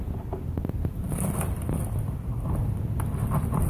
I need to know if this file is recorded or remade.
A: recorded